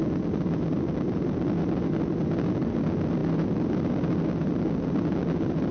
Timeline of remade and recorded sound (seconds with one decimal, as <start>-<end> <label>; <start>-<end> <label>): 0.0-1.9 remade; 1.9-3.2 recorded; 3.2-3.9 remade; 3.9-5.7 recorded